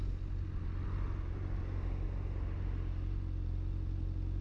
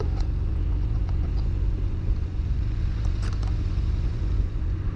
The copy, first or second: second